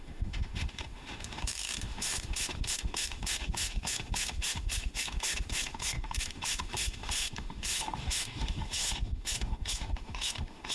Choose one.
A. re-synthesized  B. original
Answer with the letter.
A